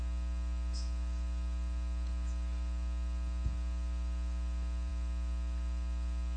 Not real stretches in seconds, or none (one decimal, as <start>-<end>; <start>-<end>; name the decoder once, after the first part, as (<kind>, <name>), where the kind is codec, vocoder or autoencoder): none